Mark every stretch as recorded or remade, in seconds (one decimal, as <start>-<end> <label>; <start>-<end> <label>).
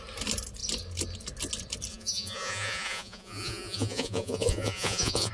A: 0.0-1.9 recorded; 1.9-5.3 remade